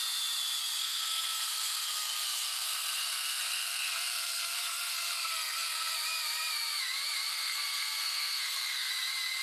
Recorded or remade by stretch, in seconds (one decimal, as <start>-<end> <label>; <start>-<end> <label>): 0.0-0.8 recorded; 0.8-5.9 remade; 5.9-7.3 recorded; 7.3-8.9 remade; 8.9-9.4 recorded